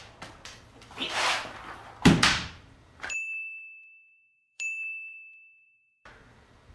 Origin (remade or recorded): remade